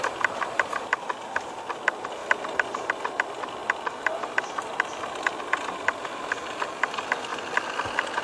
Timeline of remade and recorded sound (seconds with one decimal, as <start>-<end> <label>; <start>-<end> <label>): 0.0-2.2 recorded; 2.2-2.9 remade; 2.9-3.6 recorded; 3.6-5.4 remade; 5.4-8.2 recorded